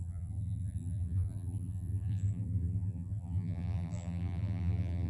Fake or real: fake